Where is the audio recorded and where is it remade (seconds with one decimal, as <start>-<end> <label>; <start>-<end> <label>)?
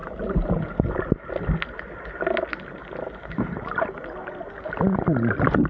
0.0-5.7 recorded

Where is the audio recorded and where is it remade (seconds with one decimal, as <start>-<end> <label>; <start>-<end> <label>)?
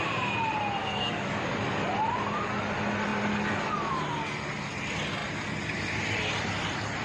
0.0-0.8 recorded; 0.8-1.5 remade; 1.5-7.0 recorded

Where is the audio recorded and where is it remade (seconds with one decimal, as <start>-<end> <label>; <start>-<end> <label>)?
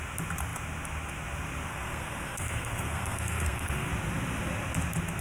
0.0-1.7 recorded; 1.7-3.9 remade; 3.9-5.2 recorded